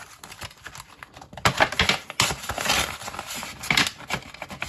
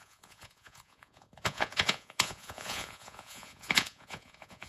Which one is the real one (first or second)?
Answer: first